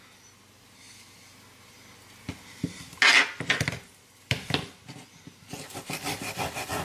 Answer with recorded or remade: recorded